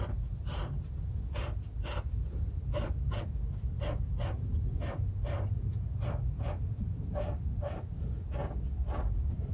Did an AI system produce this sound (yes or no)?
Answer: no